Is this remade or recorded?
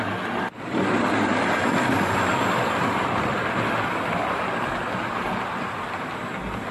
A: recorded